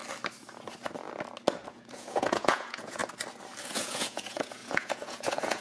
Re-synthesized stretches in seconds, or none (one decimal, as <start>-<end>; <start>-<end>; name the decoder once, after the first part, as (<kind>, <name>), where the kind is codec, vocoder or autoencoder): 1.6-3.0 (vocoder, Vocos); 3.6-5.6